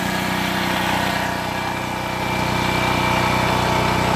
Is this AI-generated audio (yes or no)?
no